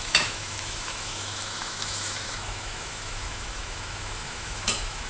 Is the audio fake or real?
fake